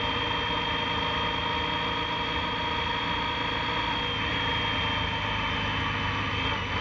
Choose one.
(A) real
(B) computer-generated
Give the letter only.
A